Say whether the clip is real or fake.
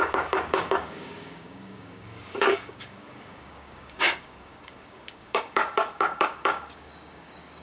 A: fake